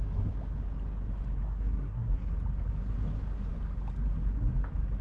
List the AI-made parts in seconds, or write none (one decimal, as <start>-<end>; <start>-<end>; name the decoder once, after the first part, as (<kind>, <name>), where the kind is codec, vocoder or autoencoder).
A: 1.4-2.3 (codec, SNAC)